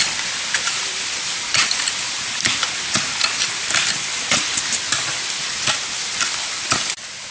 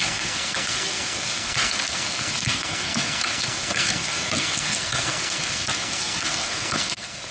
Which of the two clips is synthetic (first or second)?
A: second